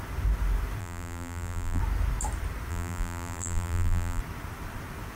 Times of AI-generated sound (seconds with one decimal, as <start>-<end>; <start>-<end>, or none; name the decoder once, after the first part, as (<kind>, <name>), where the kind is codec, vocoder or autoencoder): 0.8-1.8 (vocoder, BigVGAN v2); 2.7-4.2